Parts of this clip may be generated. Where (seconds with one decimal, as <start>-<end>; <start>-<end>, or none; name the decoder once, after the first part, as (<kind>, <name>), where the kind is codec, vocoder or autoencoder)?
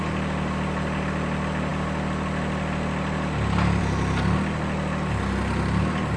none